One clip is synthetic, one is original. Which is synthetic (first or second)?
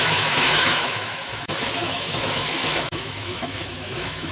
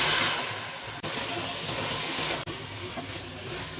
first